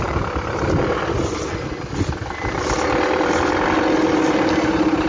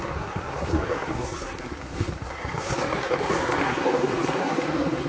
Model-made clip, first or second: second